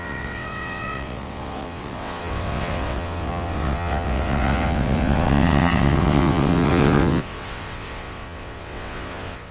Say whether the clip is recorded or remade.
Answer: remade